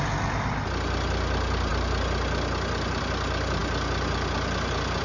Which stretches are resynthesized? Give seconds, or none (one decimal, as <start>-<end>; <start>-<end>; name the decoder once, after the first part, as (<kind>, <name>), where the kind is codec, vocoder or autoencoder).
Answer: none